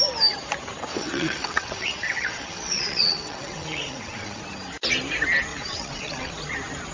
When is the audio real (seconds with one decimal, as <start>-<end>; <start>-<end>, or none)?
0.0-0.9; 4.4-5.5; 6.3-6.9